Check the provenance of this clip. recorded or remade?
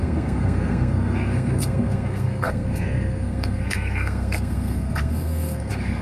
remade